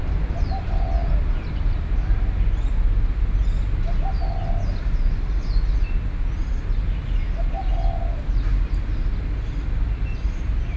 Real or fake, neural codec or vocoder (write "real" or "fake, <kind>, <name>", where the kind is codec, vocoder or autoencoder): real